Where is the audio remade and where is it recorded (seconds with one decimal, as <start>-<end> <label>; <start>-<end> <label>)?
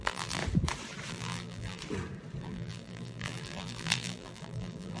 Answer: 0.0-0.4 remade; 0.4-1.1 recorded; 1.1-1.8 remade; 1.8-2.4 recorded; 2.4-5.0 remade